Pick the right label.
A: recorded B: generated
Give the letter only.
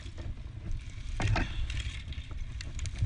A